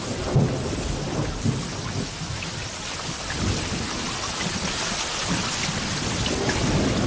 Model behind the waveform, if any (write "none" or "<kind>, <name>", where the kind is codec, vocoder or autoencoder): none